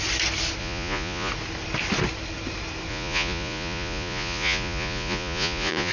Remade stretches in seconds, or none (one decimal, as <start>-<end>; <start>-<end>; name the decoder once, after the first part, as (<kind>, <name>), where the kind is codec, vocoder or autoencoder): 0.6-1.3 (vocoder, Vocos); 2.9-5.9